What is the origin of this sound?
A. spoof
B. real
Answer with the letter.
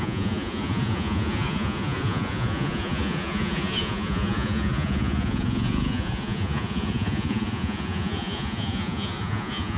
A